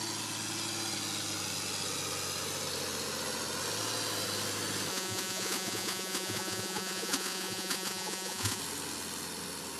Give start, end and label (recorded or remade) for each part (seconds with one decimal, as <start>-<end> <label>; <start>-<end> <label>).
0.0-4.9 recorded; 4.9-8.6 remade; 8.6-9.8 recorded